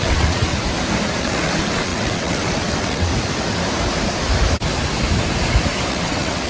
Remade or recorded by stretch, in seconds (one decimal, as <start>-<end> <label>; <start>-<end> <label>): 0.0-0.5 remade; 0.5-1.2 recorded; 1.2-3.1 remade; 3.1-5.9 recorded; 5.9-6.5 remade